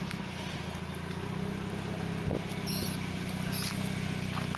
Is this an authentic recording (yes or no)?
yes